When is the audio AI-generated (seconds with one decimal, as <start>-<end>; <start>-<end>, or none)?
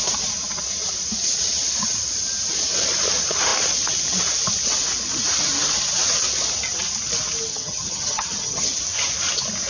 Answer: 7.5-8.8